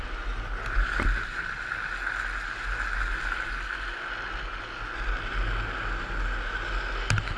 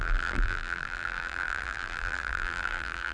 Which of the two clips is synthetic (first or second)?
second